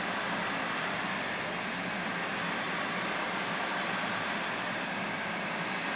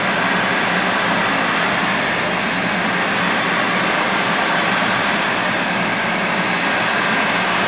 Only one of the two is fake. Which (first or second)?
first